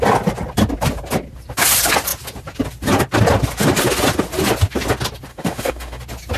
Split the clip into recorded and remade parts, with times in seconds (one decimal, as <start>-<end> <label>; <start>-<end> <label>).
0.0-5.3 recorded; 5.3-6.0 remade; 6.0-6.4 recorded